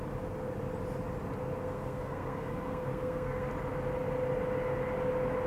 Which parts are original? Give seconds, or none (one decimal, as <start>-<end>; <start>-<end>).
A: 0.0-1.6; 3.5-5.5